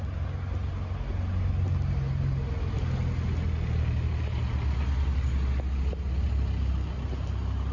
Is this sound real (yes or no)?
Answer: yes